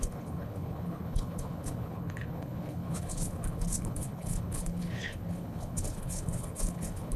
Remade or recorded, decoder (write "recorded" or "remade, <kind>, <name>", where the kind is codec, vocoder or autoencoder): remade, codec, HILCodec